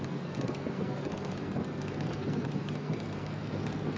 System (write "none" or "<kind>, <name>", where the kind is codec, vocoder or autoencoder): codec, SNAC